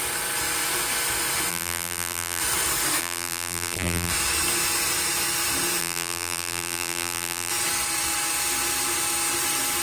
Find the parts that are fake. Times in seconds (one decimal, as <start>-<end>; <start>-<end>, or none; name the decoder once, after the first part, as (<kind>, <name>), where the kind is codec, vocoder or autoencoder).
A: 1.5-2.4 (vocoder, BigVGAN v2); 3.0-4.1; 5.8-7.5